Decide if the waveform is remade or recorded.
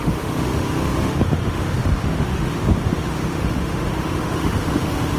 remade